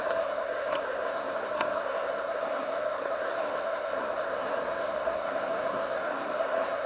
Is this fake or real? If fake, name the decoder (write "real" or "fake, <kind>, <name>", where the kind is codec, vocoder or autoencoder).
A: fake, codec, SNAC